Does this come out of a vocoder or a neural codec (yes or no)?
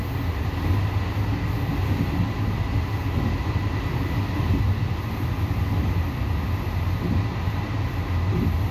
no